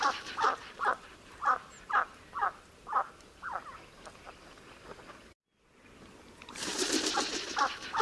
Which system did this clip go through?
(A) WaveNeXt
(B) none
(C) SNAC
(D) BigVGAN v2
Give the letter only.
B